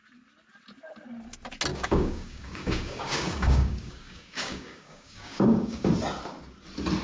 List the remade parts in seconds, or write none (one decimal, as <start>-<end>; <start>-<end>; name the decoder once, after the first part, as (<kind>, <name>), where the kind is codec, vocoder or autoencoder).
1.7-5.9 (codec, DAC)